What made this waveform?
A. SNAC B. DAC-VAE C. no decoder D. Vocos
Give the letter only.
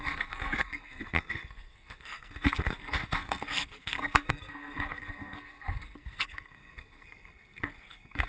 A